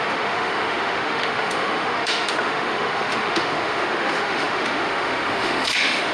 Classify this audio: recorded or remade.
remade